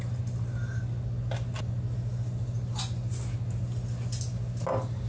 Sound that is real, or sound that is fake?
real